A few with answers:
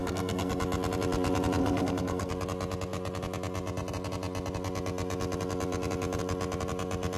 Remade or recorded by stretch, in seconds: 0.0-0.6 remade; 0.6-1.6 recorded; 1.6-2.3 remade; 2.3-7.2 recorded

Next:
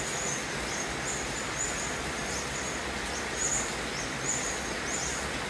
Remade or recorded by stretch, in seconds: 0.0-5.5 recorded

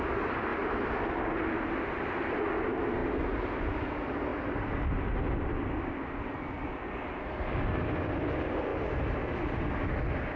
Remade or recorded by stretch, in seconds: 0.0-10.4 recorded

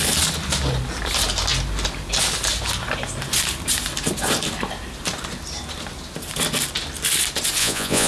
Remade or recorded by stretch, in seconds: 0.0-7.6 recorded; 7.6-8.1 remade